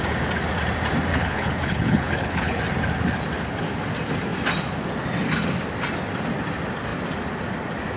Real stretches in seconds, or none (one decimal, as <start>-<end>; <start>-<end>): 0.0-1.1; 2.6-8.0